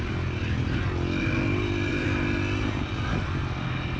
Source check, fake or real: real